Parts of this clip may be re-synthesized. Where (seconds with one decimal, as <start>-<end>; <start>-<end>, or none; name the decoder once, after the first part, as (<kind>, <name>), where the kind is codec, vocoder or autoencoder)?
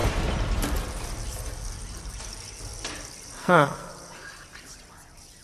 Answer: 3.4-3.9 (codec, SNAC)